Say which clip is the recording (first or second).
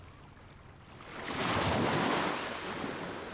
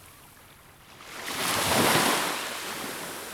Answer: first